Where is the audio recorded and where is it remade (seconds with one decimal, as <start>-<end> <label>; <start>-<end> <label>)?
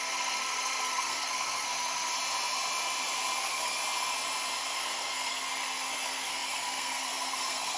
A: 0.0-2.1 remade; 2.1-3.4 recorded; 3.4-3.8 remade; 3.8-4.6 recorded; 4.6-7.8 remade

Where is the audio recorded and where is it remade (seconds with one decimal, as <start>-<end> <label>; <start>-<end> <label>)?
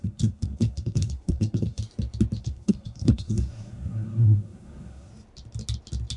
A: 0.0-1.8 remade; 1.8-2.4 recorded; 2.4-5.1 remade; 5.1-6.2 recorded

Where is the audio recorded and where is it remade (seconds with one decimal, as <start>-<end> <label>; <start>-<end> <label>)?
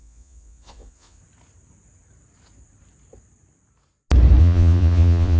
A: 0.0-1.2 remade; 1.2-4.4 recorded; 4.4-5.4 remade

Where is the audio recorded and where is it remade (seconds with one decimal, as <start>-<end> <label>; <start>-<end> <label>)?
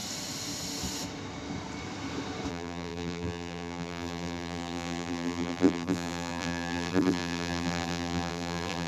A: 0.0-2.5 recorded; 2.5-8.9 remade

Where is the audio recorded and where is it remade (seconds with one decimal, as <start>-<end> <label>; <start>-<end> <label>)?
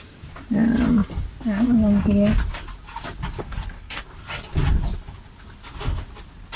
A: 0.0-3.4 recorded; 3.4-4.0 remade; 4.0-6.6 recorded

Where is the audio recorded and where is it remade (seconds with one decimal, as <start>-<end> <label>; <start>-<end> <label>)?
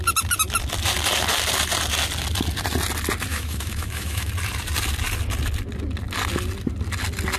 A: 0.0-3.3 recorded; 3.3-4.3 remade; 4.3-7.4 recorded